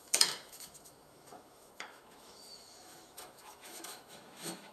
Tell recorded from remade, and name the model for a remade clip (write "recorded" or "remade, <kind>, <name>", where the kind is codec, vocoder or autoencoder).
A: remade, autoencoder, DAC-VAE